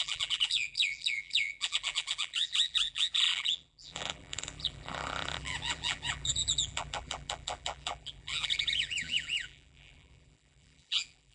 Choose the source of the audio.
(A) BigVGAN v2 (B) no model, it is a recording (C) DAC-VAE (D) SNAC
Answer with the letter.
A